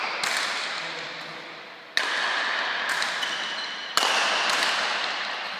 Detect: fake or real real